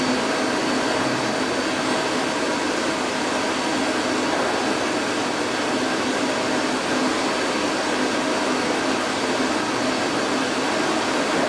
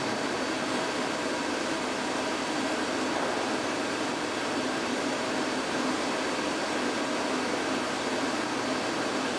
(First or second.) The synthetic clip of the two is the second